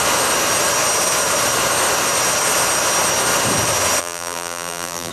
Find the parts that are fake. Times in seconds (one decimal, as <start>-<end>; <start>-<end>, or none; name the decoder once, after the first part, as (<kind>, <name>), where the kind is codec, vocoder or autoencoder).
4.0-5.1 (vocoder, BigVGAN v2)